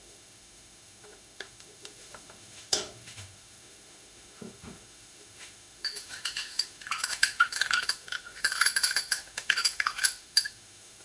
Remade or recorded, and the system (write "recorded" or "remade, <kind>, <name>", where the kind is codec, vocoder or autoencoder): remade, autoencoder, DAC-VAE